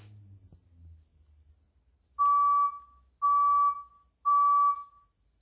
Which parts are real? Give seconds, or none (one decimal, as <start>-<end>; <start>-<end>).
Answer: 0.0-5.4